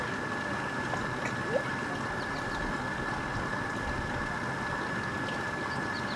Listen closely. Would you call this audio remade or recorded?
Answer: recorded